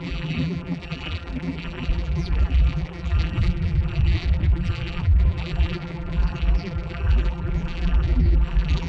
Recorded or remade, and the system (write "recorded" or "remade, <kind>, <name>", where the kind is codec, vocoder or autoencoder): remade, vocoder, BigVGAN v2